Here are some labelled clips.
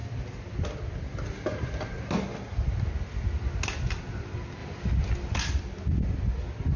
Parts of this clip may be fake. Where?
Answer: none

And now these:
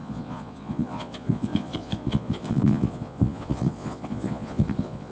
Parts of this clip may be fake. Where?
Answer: 0.0-5.1 (vocoder, Vocos)